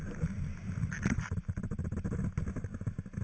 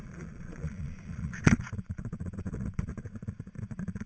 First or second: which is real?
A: first